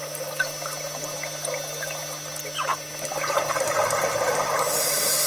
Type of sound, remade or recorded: recorded